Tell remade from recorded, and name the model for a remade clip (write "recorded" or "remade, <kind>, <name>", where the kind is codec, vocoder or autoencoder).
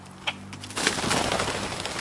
recorded